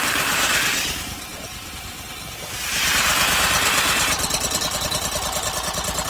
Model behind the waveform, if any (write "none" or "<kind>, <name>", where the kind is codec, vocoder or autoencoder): vocoder, BigVGAN v2